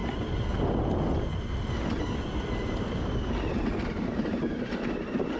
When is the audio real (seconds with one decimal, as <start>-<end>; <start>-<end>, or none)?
0.0-5.4